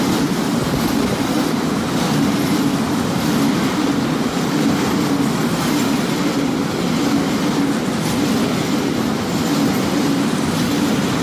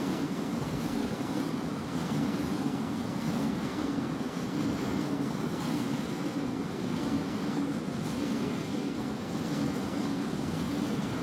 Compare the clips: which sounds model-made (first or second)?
second